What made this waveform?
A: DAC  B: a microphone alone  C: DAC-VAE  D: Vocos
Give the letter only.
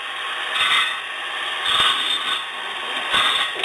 B